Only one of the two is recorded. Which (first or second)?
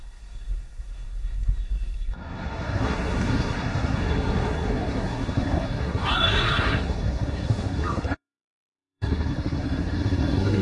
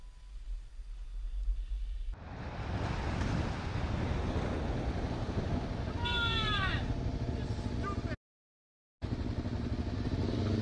second